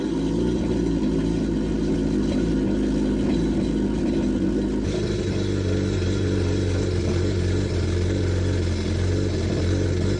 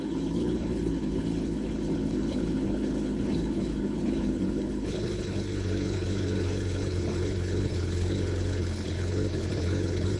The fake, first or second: second